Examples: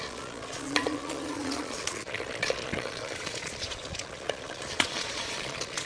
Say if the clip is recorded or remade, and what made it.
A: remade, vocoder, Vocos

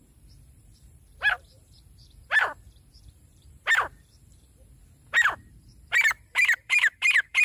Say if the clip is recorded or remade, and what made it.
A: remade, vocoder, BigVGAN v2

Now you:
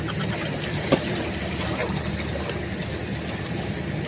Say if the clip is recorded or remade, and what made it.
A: recorded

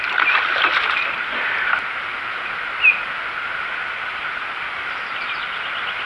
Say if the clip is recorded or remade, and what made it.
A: recorded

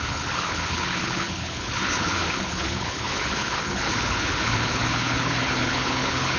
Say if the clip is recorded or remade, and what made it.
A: remade, codec, HILCodec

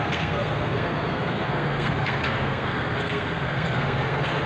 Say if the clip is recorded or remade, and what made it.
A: remade, codec, SNAC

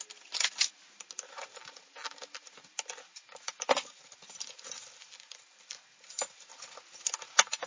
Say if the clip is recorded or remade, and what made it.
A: recorded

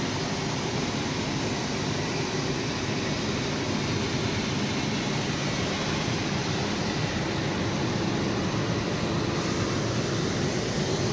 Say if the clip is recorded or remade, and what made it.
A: recorded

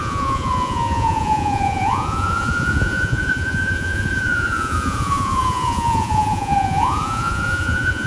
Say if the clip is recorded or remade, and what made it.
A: remade, vocoder, Vocos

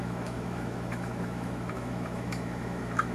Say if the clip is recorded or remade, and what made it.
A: remade, autoencoder, DAC-VAE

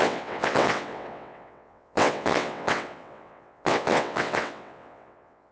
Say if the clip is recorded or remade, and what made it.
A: remade, vocoder, WaveNeXt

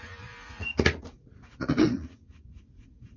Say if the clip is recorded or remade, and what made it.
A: remade, vocoder, Vocos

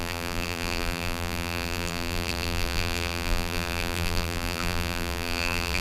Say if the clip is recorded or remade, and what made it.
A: remade, vocoder, BigVGAN v2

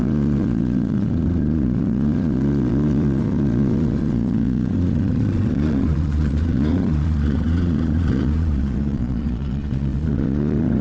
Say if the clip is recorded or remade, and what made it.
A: remade, vocoder, Vocos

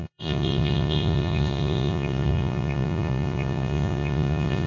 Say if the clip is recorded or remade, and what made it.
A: remade, vocoder, Vocos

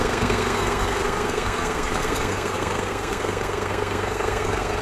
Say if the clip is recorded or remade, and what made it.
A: remade, codec, SNAC